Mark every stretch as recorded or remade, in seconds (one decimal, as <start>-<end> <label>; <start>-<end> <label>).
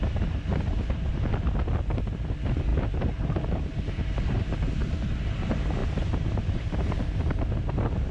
0.0-0.5 recorded; 0.5-1.1 remade; 1.1-2.7 recorded; 2.7-4.7 remade; 4.7-5.8 recorded; 5.8-7.0 remade; 7.0-8.1 recorded